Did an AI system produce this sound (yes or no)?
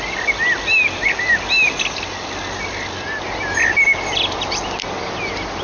no